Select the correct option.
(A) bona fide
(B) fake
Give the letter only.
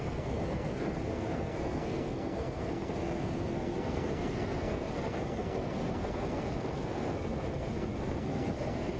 B